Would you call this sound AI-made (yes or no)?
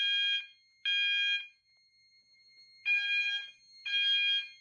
no